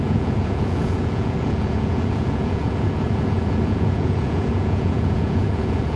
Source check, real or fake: fake